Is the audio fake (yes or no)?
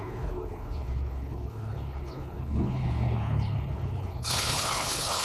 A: yes